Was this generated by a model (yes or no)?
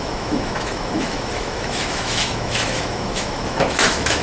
yes